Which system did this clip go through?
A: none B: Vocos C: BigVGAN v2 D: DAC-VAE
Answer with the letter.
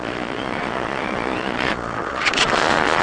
B